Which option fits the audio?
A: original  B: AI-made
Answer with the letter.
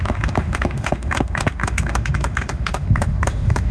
B